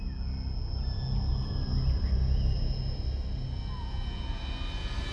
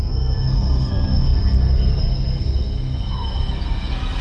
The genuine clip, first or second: first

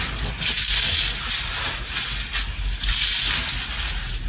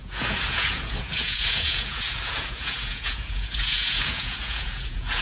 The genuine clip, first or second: first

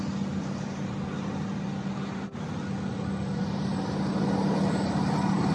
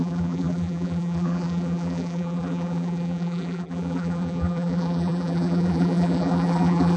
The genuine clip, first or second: first